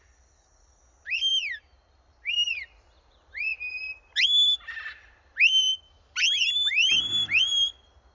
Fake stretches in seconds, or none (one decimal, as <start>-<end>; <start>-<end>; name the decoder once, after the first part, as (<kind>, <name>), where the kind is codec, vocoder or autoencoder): none